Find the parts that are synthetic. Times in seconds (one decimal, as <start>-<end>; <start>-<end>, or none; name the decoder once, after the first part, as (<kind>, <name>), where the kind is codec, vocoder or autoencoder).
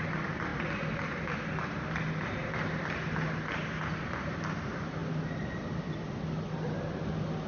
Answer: none